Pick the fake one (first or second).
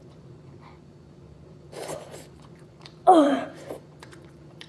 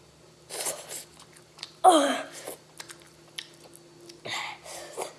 first